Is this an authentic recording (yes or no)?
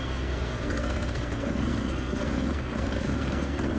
no